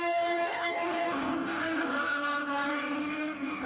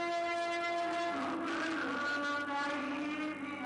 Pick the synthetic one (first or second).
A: first